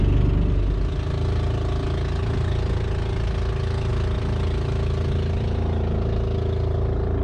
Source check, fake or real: real